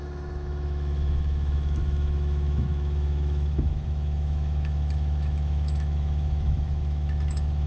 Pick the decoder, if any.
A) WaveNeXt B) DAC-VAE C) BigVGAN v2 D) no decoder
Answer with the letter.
B